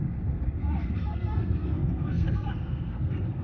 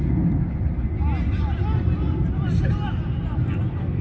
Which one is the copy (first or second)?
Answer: first